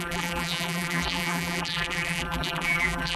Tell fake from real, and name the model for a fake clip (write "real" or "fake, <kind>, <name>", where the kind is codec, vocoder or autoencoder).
fake, vocoder, BigVGAN v2